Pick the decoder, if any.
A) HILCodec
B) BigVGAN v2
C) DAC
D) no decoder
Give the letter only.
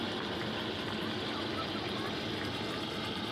D